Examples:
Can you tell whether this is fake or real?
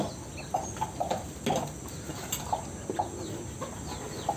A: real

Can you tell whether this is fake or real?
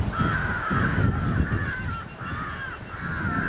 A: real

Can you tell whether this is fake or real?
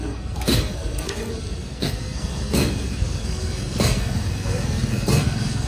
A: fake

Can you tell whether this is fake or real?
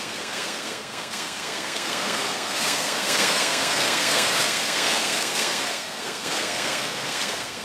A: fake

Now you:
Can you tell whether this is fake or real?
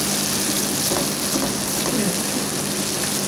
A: real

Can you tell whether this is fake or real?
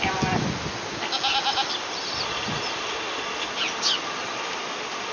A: real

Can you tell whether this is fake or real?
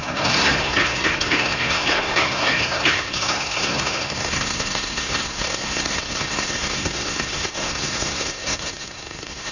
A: fake